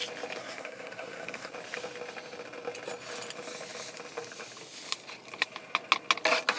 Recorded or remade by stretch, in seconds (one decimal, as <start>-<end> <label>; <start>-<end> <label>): 0.0-0.4 recorded; 0.4-1.5 remade; 1.5-6.6 recorded